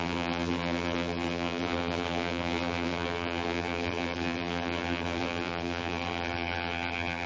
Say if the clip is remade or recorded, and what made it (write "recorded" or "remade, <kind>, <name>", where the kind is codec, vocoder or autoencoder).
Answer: remade, vocoder, BigVGAN v2